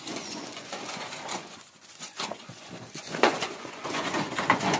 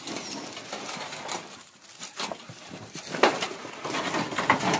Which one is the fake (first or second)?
first